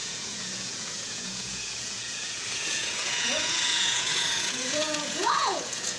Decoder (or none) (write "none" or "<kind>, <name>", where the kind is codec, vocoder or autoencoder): vocoder, Vocos